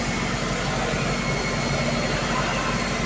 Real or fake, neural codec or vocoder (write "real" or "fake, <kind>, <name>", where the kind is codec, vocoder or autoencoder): real